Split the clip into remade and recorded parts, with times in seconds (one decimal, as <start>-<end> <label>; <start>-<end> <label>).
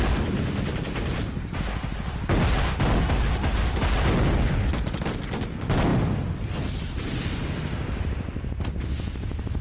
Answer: 0.0-9.6 recorded